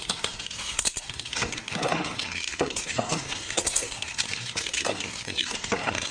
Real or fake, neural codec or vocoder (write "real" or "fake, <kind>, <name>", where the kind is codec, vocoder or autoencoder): fake, codec, SNAC